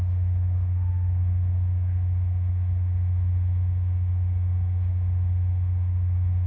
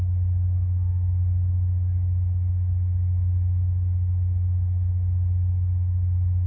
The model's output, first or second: first